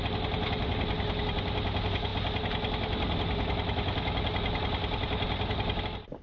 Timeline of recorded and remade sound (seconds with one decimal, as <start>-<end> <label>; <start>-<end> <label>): 0.0-6.2 recorded